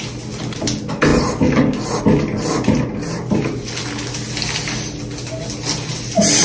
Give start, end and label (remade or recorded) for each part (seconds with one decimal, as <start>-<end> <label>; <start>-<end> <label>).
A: 0.0-6.4 recorded